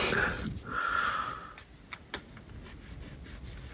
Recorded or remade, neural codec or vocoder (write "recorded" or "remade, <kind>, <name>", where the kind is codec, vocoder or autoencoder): recorded